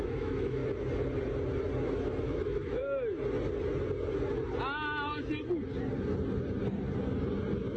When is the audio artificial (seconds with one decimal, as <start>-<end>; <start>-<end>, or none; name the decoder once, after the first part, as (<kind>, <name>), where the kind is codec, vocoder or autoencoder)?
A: 0.0-0.6 (autoencoder, DAC-VAE); 2.2-2.8